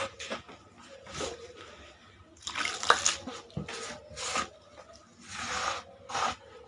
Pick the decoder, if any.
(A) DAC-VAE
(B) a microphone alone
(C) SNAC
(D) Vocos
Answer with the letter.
B